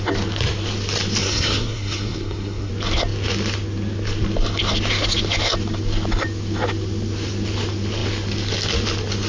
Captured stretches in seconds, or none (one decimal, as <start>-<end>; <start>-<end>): 0.0-1.2; 2.7-9.3